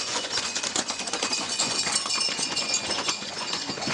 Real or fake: fake